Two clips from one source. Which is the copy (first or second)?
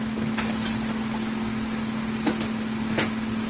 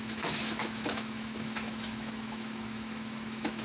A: second